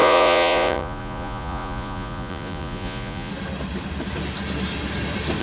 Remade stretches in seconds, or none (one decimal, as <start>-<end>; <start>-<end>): 0.0-3.3